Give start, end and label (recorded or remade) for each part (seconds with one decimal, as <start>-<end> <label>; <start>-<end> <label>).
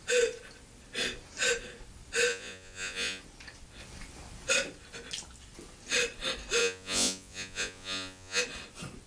0.0-2.3 recorded; 2.3-3.2 remade; 3.2-6.6 recorded; 6.6-8.4 remade; 8.4-9.1 recorded